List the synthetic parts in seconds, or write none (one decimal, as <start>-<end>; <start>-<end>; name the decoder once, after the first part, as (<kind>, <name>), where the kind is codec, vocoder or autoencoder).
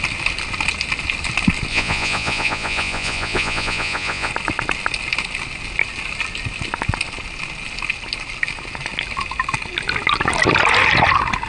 1.7-4.3 (vocoder, Vocos)